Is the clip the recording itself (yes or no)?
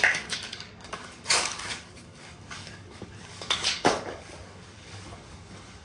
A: no